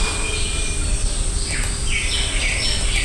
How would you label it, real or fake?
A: real